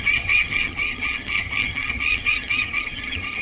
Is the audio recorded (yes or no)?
no